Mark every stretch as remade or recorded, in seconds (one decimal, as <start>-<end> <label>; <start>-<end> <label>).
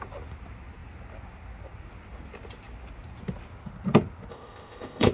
0.0-4.3 recorded; 4.3-5.1 remade